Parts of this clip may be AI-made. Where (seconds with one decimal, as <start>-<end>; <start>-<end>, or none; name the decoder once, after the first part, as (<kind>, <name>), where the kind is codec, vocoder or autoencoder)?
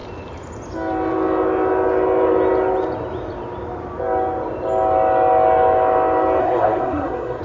6.4-7.4 (codec, SNAC)